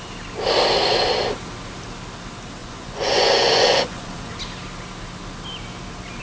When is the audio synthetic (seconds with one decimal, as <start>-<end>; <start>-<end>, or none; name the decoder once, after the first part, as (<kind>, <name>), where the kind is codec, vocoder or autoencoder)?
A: 2.6-4.3 (vocoder, Vocos)